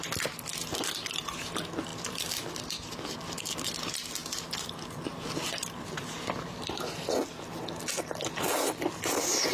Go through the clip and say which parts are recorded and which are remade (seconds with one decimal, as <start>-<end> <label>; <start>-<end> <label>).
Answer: 0.0-1.9 recorded; 1.9-3.4 remade; 3.4-4.2 recorded; 4.2-6.8 remade; 6.8-9.5 recorded